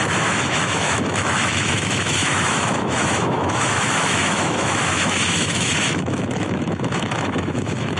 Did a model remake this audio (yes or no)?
yes